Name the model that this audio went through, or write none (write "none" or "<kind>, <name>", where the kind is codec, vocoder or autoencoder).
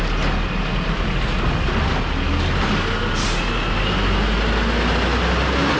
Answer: none